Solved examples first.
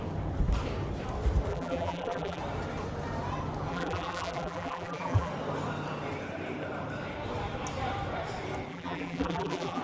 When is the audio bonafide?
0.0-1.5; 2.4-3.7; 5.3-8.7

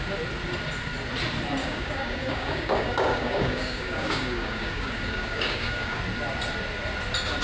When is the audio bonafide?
0.0-1.6; 6.0-7.4